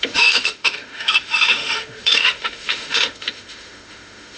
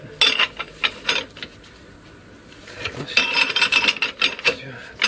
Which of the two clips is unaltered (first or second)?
second